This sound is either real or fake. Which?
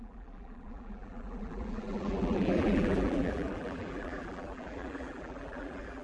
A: fake